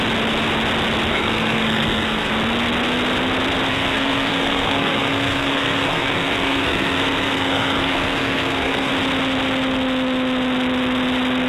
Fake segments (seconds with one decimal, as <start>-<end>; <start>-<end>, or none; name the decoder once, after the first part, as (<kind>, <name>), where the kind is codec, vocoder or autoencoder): 1.1-2.3 (codec, SNAC); 3.7-8.9